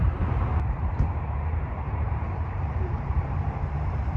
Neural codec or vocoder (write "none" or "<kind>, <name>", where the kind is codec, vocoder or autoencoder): vocoder, BigVGAN v2